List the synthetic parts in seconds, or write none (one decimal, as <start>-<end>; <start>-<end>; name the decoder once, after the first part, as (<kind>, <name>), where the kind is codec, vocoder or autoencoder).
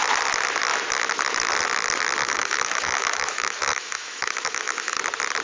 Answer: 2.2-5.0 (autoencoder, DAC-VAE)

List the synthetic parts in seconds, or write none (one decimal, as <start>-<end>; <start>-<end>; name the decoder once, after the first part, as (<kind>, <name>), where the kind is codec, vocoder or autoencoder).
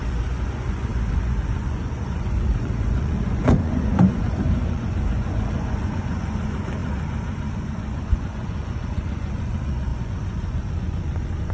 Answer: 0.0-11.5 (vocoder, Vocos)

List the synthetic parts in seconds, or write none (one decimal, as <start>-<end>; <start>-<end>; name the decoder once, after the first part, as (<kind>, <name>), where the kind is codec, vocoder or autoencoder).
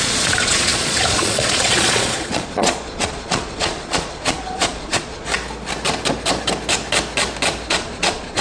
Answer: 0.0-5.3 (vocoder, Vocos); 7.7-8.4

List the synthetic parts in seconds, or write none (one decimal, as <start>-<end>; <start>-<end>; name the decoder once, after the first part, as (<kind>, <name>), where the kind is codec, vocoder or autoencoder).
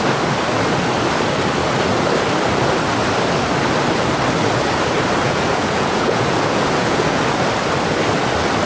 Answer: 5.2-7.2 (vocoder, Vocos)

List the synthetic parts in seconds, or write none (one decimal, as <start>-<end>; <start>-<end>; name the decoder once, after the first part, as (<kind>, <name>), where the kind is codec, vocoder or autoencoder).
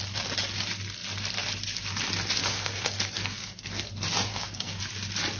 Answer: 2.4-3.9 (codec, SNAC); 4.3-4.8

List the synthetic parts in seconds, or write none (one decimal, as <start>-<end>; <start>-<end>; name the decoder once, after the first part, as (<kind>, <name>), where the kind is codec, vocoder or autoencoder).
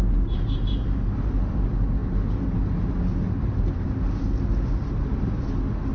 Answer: none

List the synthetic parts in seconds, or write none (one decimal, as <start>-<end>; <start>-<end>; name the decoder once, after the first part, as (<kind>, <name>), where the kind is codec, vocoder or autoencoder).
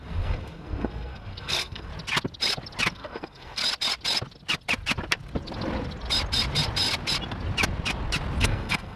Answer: 0.0-1.9 (codec, SNAC); 2.9-3.6; 8.4-9.0